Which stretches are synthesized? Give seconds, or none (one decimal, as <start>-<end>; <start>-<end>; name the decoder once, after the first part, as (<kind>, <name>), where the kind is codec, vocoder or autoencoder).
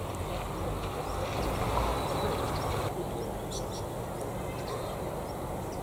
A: none